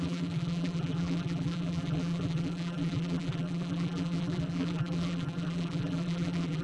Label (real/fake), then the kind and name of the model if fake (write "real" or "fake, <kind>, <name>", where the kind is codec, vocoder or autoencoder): fake, vocoder, BigVGAN v2